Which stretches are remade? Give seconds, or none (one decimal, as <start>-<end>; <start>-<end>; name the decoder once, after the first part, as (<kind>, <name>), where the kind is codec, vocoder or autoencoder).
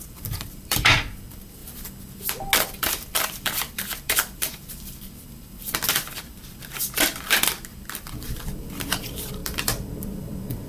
0.0-1.6 (vocoder, BigVGAN v2); 2.6-10.7